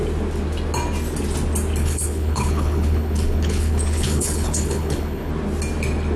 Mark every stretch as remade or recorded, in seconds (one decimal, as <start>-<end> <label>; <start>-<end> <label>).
0.0-1.8 recorded; 1.8-5.3 remade; 5.3-6.2 recorded